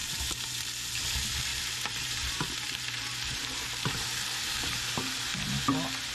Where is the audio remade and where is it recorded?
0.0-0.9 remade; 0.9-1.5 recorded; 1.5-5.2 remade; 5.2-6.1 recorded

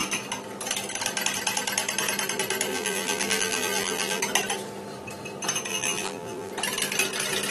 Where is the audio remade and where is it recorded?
0.0-2.7 recorded; 2.7-4.2 remade; 4.2-5.7 recorded; 5.7-6.5 remade; 6.5-7.5 recorded

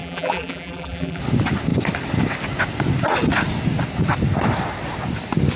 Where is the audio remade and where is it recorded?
0.0-1.2 remade; 1.2-5.6 recorded

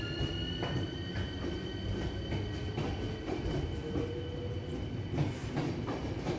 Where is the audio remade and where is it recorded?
0.0-5.4 recorded; 5.4-6.4 remade

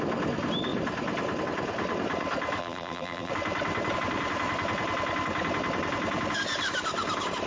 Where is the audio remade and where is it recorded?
0.0-2.6 recorded; 2.6-3.3 remade; 3.3-7.5 recorded

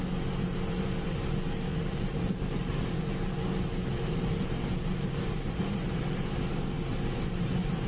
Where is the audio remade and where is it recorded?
0.0-1.7 recorded; 1.7-6.0 remade; 6.0-7.9 recorded